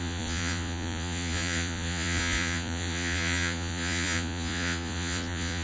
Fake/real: fake